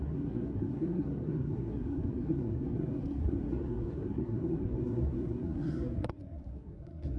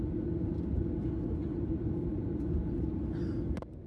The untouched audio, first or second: second